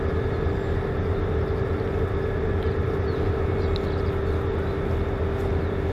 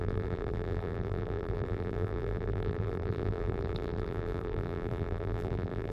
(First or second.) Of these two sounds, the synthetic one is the second